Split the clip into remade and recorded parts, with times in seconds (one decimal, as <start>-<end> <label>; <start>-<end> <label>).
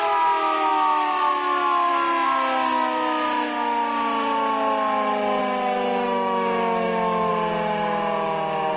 0.0-5.4 recorded; 5.4-7.3 remade; 7.3-8.8 recorded